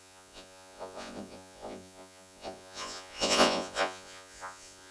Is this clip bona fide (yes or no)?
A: no